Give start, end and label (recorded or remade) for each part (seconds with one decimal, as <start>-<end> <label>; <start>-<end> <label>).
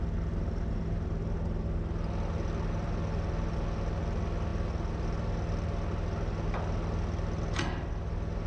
0.0-8.5 recorded